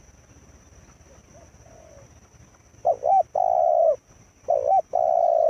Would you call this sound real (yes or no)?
yes